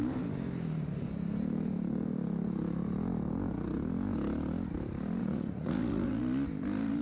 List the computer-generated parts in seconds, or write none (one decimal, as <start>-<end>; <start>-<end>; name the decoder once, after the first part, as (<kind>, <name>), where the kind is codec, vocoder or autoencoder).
5.2-6.2 (vocoder, Vocos)